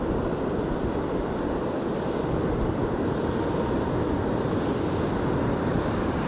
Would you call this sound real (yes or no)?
yes